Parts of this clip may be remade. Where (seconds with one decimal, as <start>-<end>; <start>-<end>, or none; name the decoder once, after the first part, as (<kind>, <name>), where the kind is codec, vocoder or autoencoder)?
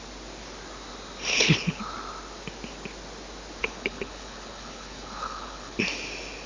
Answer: 1.3-1.8 (codec, HILCodec); 3.6-5.8